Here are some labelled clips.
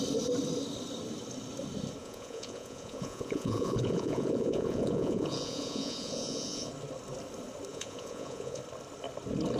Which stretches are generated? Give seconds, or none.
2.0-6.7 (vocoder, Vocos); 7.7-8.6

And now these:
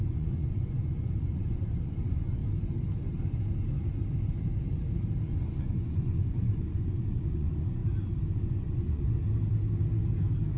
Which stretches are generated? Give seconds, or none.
0.0-2.4 (vocoder, Vocos); 5.2-7.8; 8.4-9.2

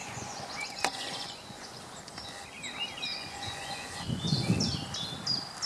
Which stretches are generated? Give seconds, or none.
0.0-1.8 (vocoder, Vocos); 3.1-4.5

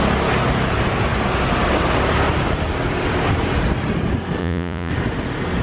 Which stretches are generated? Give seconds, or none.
4.4-4.9 (vocoder, Vocos)

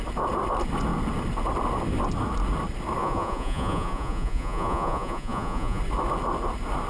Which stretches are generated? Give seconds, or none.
3.0-5.8 (vocoder, Vocos)

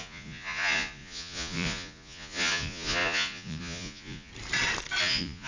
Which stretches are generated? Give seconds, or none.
0.0-4.3 (vocoder, Vocos); 5.0-5.5

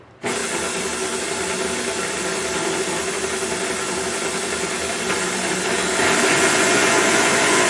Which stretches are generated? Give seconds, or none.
6.3-7.7 (vocoder, Vocos)

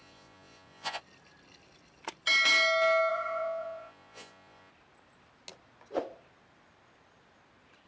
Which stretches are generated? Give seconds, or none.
0.0-1.0 (vocoder, Vocos); 3.1-4.7